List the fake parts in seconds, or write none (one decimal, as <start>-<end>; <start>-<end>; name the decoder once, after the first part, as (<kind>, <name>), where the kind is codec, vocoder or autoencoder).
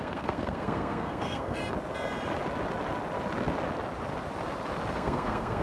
0.0-1.6 (codec, SNAC); 4.9-5.6